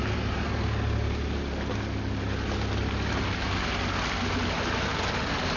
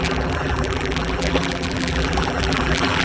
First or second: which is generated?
second